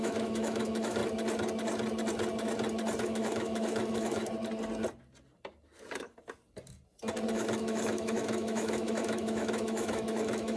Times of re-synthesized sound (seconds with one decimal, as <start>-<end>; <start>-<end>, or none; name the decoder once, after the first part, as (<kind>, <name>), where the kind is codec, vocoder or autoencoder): 0.0-1.0 (autoencoder, DAC-VAE); 3.0-4.2; 7.3-10.6